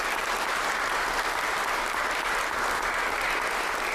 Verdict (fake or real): real